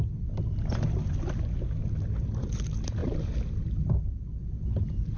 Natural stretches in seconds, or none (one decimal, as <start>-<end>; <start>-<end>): 0.0-5.2